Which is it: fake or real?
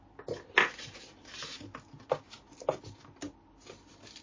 real